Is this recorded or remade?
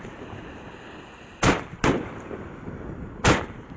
recorded